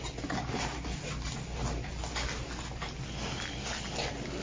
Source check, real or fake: real